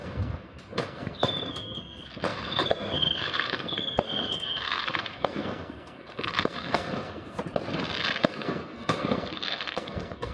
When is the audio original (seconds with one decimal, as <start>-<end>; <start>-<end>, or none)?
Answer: 7.4-8.2